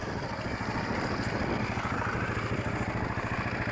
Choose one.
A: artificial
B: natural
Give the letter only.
B